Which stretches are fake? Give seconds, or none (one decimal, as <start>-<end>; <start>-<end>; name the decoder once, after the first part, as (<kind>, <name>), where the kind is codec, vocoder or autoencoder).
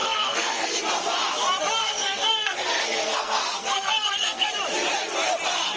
0.0-0.8 (codec, SNAC); 1.8-4.5